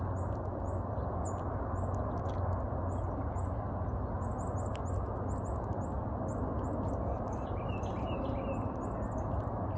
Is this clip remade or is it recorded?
recorded